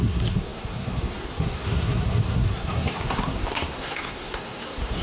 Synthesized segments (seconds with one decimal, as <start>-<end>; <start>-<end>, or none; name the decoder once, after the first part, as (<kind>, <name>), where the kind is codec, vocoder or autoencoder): 0.0-5.0 (codec, SNAC)